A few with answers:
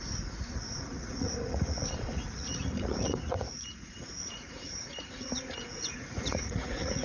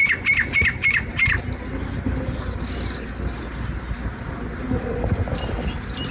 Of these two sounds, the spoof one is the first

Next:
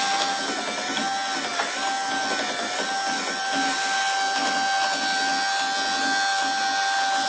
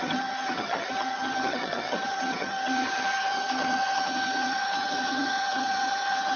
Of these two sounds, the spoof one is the second